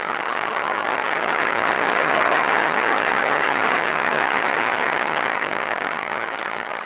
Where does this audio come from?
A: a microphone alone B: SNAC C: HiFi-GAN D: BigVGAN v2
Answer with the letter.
C